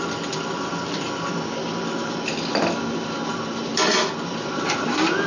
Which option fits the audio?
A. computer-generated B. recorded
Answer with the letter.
A